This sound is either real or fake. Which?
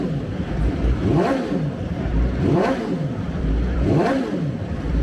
fake